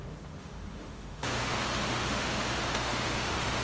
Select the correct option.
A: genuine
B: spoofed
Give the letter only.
B